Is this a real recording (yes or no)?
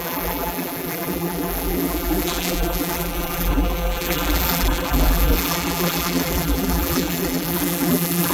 no